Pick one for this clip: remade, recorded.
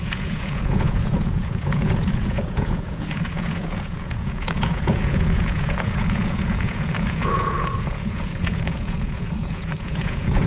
remade